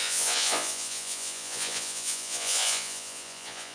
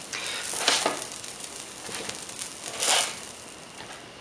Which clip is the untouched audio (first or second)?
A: second